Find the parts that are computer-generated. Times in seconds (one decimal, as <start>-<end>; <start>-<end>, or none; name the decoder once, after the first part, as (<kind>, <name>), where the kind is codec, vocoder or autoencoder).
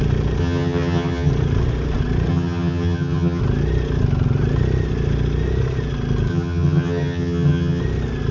0.4-1.3 (vocoder, HiFi-GAN); 2.3-3.4; 6.3-7.8